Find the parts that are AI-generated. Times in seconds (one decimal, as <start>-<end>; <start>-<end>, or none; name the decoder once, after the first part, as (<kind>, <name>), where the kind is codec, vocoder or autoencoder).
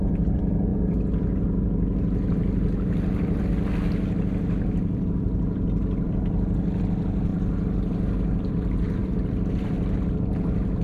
9.0-9.5 (vocoder, BigVGAN v2)